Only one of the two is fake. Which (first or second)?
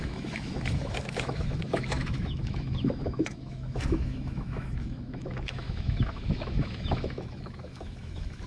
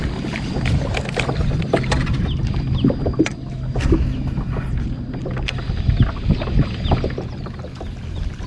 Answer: first